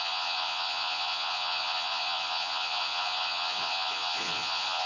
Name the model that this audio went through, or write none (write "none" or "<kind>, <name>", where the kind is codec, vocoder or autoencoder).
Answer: vocoder, Vocos